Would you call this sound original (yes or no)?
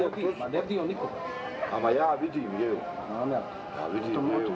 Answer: yes